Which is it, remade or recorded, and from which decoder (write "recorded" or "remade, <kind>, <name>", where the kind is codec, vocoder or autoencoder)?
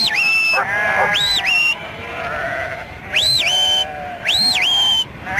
remade, vocoder, BigVGAN v2